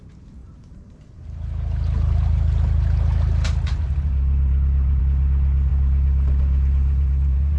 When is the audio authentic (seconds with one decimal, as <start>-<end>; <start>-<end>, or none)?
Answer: 0.0-0.4; 5.0-5.7